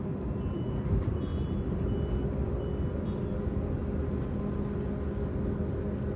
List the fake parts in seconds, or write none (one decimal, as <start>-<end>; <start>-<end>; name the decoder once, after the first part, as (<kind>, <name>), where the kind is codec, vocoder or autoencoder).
none